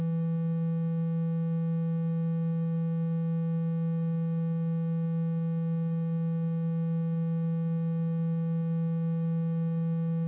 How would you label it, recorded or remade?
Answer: recorded